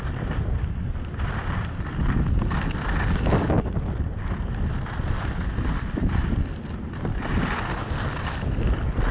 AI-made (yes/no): no